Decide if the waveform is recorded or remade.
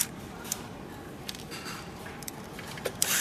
remade